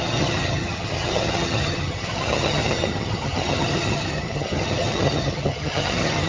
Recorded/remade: remade